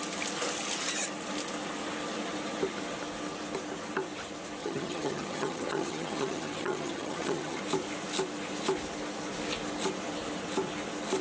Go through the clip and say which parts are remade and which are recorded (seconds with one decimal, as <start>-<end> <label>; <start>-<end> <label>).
0.0-4.6 recorded; 4.6-7.6 remade; 7.6-11.2 recorded

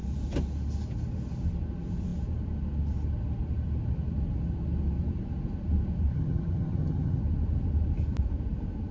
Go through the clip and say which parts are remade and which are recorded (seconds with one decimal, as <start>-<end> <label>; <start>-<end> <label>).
0.0-6.1 recorded; 6.1-7.2 remade; 7.2-8.9 recorded

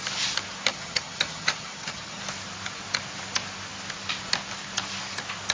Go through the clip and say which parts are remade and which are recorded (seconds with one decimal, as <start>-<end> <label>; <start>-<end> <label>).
0.0-0.7 recorded; 0.7-2.2 remade; 2.2-5.5 recorded

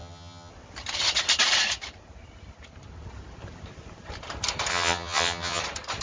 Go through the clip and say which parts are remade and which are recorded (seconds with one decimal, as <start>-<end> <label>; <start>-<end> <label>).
0.0-0.5 remade; 0.5-4.7 recorded; 4.7-5.6 remade; 5.6-6.0 recorded

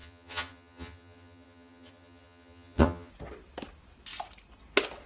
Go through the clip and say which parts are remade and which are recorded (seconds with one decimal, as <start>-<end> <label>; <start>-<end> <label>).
0.0-3.1 remade; 3.1-5.1 recorded

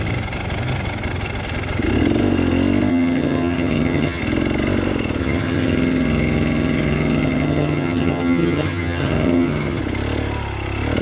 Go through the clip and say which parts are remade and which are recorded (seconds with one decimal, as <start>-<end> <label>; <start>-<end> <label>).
0.0-2.9 recorded; 2.9-4.2 remade; 4.2-5.2 recorded; 5.2-9.8 remade; 9.8-11.0 recorded

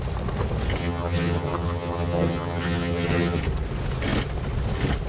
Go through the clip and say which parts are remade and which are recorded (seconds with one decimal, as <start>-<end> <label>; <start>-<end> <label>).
0.0-0.8 recorded; 0.8-3.4 remade; 3.4-5.1 recorded